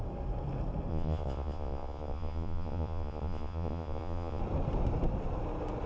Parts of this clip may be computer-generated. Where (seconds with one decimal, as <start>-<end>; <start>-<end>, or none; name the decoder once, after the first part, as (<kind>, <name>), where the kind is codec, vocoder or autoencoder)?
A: 0.9-4.4 (vocoder, Vocos)